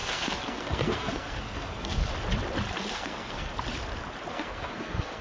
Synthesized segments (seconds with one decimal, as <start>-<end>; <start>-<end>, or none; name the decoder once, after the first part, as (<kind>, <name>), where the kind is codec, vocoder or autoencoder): 0.0-2.1 (codec, SNAC); 2.9-3.5; 4.3-5.2